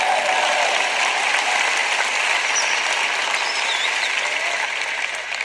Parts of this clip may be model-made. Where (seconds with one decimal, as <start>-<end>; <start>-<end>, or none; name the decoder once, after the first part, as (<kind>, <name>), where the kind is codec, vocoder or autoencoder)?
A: none